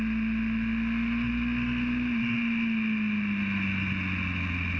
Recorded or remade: recorded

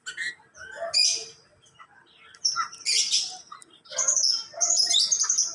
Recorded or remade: recorded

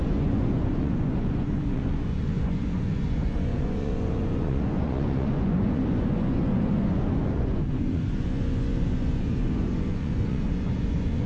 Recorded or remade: remade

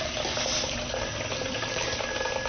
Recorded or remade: recorded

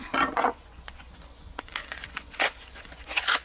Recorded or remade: remade